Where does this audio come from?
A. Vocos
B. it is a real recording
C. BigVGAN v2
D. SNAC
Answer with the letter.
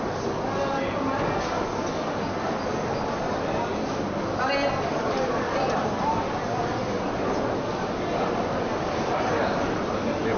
B